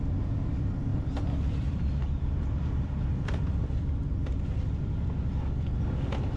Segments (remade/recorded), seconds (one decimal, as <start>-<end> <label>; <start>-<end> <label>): 0.0-0.9 recorded; 0.9-3.9 remade; 3.9-6.4 recorded